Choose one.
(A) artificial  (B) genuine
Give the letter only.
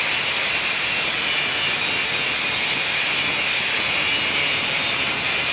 B